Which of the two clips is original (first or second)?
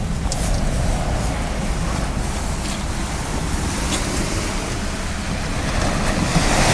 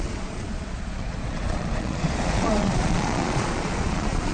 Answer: first